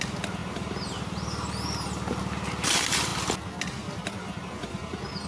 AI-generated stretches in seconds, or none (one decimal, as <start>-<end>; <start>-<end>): none